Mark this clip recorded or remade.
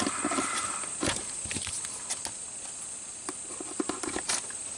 recorded